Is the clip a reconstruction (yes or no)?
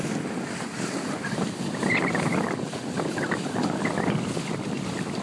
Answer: no